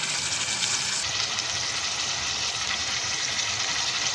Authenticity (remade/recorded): recorded